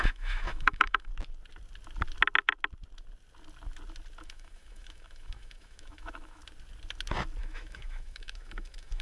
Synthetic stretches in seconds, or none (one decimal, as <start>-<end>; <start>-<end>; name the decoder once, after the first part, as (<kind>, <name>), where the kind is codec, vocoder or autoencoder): 0.0-1.1 (autoencoder, DAC-VAE); 4.2-6.4; 7.4-9.0